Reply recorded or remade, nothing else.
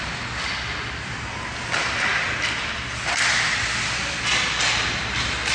recorded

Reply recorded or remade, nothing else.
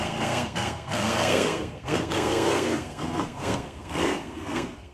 remade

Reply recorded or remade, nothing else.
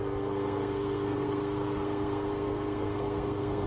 remade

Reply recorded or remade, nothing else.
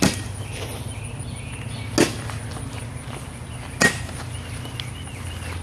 recorded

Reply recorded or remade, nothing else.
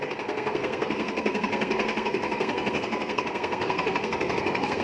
remade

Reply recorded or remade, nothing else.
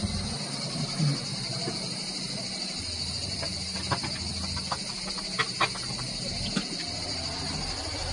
recorded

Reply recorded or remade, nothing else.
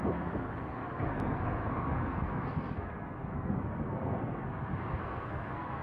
remade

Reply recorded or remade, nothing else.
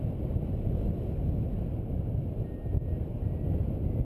recorded